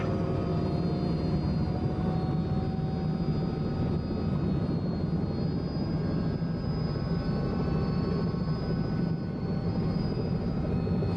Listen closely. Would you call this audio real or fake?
real